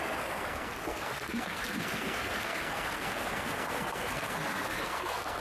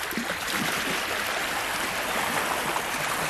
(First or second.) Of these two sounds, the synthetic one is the first